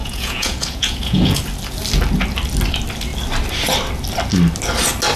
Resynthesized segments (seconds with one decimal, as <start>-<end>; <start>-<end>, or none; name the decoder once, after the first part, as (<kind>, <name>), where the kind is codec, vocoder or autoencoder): 0.0-1.4 (vocoder, Vocos)

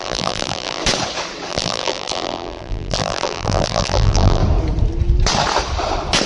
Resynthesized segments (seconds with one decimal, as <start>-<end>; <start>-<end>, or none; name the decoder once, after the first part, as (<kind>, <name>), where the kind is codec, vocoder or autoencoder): 0.0-0.8 (vocoder, BigVGAN v2); 1.5-4.4

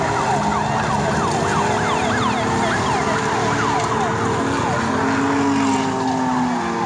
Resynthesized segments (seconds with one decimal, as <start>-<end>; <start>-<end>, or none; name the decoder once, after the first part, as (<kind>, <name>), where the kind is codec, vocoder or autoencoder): none

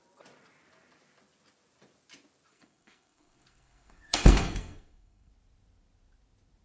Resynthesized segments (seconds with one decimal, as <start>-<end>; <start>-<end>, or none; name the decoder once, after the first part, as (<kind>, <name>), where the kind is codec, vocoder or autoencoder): 2.5-5.3 (codec, SNAC)

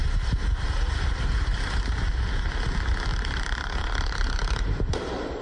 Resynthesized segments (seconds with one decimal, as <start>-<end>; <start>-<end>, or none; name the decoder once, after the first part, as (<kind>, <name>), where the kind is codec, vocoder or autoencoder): 1.5-2.2 (vocoder, BigVGAN v2); 3.1-5.4

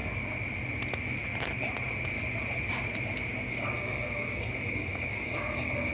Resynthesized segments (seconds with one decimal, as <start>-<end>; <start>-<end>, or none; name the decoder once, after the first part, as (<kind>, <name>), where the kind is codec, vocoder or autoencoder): 3.5-5.9 (codec, DAC)

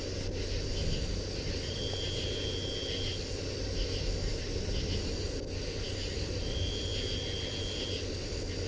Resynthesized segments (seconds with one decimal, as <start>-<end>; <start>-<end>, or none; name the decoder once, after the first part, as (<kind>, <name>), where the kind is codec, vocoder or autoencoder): none